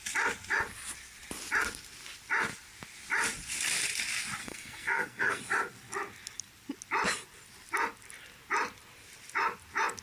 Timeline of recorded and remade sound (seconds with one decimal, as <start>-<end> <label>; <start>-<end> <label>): 0.0-4.4 recorded; 4.4-5.4 remade; 5.4-10.0 recorded